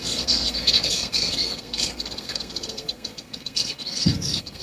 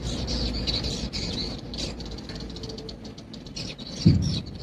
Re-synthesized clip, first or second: first